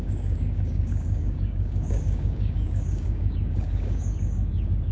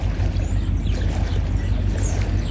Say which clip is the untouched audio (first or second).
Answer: second